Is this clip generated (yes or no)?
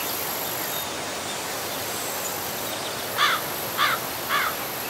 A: no